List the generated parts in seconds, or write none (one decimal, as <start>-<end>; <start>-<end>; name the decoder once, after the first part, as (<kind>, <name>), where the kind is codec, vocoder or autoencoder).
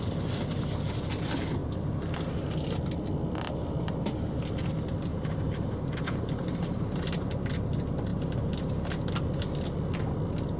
5.1-7.5 (vocoder, BigVGAN v2); 8.1-8.8